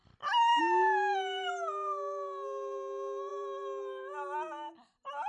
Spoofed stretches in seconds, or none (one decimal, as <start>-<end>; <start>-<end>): none